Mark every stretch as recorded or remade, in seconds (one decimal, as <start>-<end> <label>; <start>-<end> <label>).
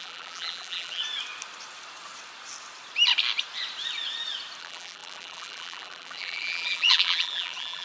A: 0.0-1.0 remade; 1.0-4.6 recorded; 4.6-7.8 remade